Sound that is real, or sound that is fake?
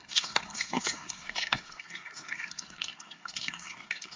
fake